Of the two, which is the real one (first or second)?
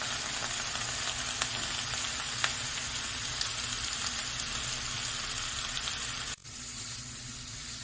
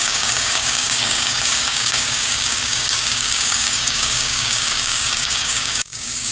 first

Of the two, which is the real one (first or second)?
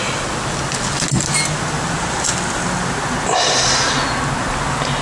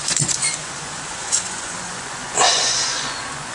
first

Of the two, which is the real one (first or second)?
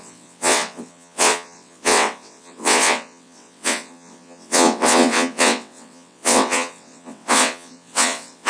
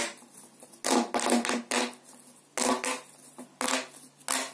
second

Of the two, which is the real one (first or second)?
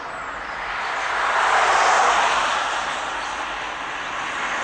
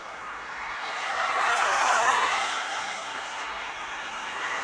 first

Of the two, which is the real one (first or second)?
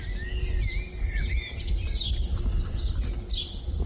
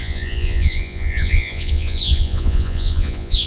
first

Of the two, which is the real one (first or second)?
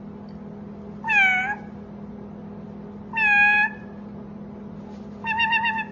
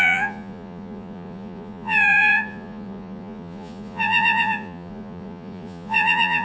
first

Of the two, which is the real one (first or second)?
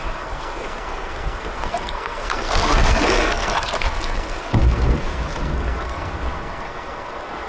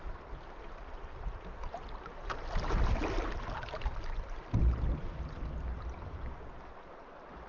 second